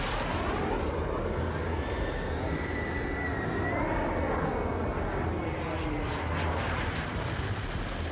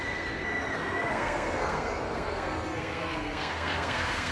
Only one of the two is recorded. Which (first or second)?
first